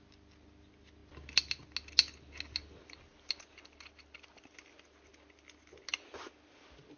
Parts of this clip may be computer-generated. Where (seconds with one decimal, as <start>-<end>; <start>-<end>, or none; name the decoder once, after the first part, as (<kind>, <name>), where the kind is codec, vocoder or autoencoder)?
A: none